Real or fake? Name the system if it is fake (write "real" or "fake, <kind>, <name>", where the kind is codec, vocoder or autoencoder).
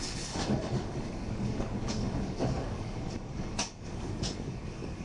fake, codec, DAC